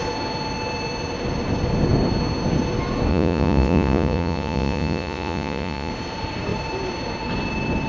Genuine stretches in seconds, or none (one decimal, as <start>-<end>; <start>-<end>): 0.0-3.1; 5.9-7.9